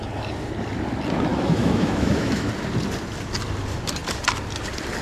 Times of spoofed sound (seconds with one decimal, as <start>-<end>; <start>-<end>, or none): 1.3-2.5